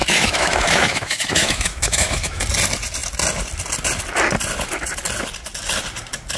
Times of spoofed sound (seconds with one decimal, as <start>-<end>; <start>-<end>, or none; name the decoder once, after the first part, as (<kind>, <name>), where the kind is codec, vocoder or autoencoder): 0.0-2.4 (autoencoder, DAC-VAE)